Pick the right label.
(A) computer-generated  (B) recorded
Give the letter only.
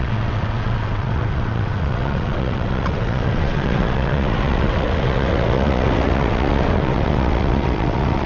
A